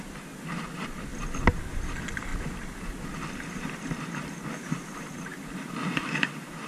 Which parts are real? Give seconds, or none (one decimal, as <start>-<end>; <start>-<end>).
1.1-1.7; 2.3-3.4